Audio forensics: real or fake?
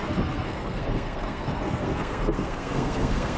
fake